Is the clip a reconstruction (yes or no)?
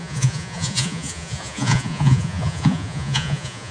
yes